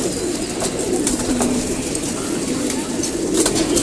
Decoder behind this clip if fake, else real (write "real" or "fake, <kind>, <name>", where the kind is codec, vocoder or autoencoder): real